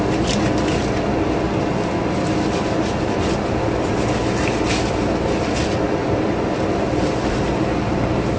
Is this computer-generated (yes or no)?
no